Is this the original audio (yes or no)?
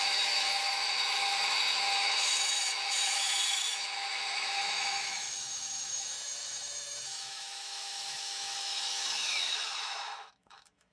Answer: no